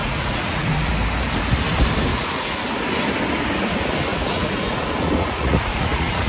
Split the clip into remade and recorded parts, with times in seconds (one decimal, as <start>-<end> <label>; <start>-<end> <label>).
0.0-0.9 remade; 0.9-2.1 recorded; 2.1-2.7 remade; 2.7-4.1 recorded; 4.1-6.3 remade